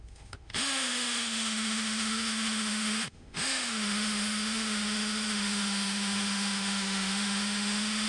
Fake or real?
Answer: fake